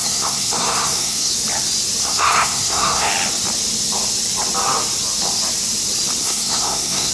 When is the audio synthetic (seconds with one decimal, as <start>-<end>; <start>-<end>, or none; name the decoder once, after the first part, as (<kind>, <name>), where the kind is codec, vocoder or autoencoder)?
0.0-1.3 (codec, SNAC); 2.0-3.1; 6.2-7.1